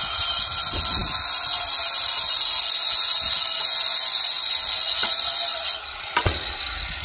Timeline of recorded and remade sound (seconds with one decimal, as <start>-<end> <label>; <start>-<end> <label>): 0.0-4.6 recorded; 4.6-5.1 remade; 5.1-5.5 recorded; 5.5-6.6 remade; 6.6-7.0 recorded